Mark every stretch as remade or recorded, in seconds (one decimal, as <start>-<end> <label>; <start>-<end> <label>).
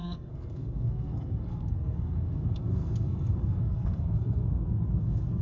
0.0-5.4 remade